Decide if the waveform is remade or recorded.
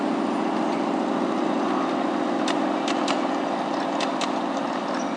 recorded